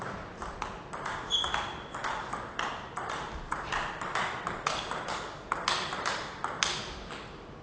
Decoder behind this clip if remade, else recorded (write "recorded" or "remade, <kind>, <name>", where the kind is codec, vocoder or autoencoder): recorded